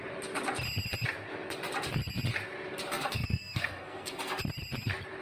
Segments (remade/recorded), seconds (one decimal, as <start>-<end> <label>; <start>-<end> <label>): 0.0-2.9 recorded; 2.9-4.4 remade; 4.4-5.2 recorded